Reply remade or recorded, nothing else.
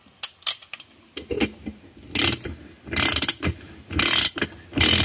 recorded